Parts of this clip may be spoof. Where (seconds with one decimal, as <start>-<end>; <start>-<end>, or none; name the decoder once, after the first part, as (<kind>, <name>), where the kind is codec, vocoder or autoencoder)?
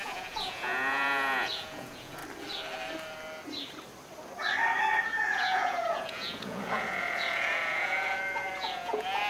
0.0-2.2 (vocoder, Vocos); 5.0-9.3